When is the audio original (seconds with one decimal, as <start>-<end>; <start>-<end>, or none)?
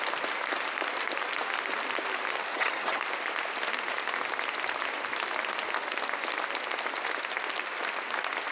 0.0-2.5; 3.0-8.5